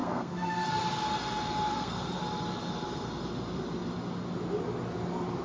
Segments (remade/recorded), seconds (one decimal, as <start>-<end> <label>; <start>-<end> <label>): 0.0-0.8 remade; 0.8-1.7 recorded; 1.7-2.2 remade; 2.2-5.4 recorded